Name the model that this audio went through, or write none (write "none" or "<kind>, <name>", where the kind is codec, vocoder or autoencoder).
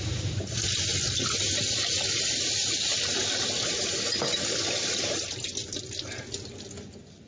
none